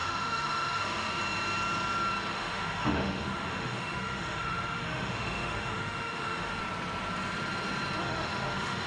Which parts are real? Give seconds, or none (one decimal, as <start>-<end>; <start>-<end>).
1.2-2.3; 6.6-8.0